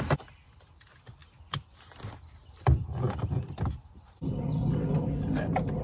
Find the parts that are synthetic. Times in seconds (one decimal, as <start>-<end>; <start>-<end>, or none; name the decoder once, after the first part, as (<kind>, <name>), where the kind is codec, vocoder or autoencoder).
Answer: none